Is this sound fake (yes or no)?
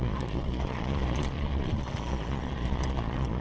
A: yes